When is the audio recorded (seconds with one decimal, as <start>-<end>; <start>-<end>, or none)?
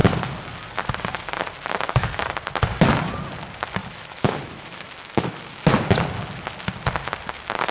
0.0-3.8; 5.4-7.7